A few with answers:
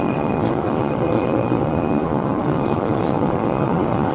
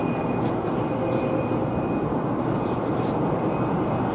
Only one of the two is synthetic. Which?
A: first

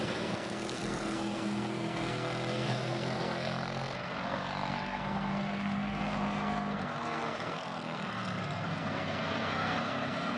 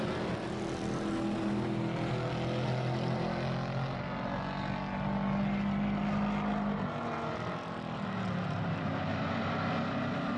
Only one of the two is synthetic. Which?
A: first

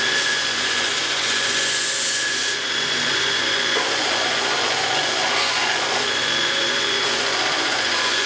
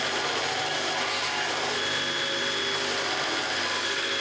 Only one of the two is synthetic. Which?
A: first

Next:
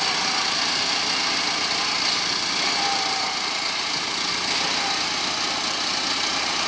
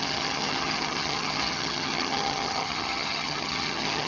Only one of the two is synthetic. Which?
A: second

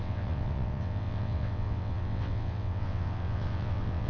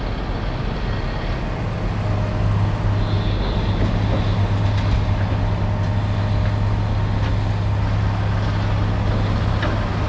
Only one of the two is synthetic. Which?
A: first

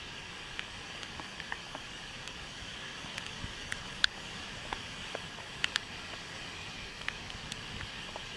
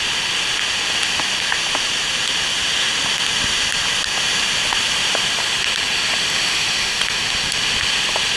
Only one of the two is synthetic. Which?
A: first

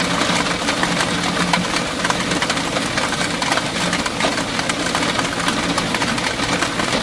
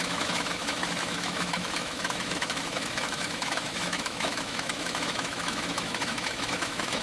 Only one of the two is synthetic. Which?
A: second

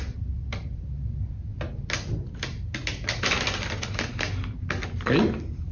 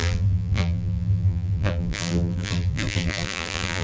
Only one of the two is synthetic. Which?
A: second